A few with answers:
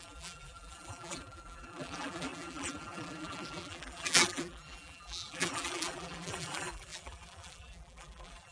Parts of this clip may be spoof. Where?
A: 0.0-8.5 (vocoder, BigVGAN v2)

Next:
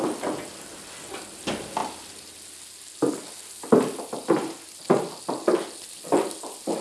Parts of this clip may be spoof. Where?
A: none

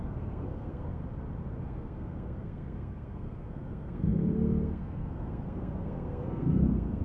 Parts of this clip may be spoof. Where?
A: 0.0-1.0 (codec, SNAC); 1.6-7.0